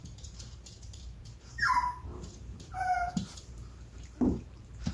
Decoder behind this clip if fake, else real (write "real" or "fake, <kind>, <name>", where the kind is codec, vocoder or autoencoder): fake, vocoder, BigVGAN v2